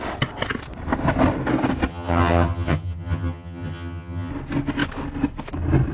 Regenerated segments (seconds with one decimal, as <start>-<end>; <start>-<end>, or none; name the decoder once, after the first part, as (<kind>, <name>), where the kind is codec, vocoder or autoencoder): 1.9-4.3 (vocoder, HiFi-GAN)